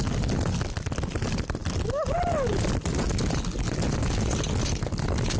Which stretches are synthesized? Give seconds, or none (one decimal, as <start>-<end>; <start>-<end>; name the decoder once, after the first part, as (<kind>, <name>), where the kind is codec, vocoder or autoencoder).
none